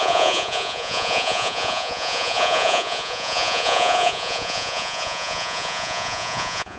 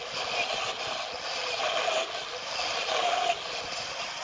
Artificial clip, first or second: first